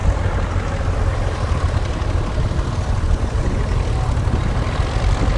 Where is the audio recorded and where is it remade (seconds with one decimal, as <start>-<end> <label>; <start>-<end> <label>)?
0.0-2.9 recorded; 2.9-3.6 remade; 3.6-5.4 recorded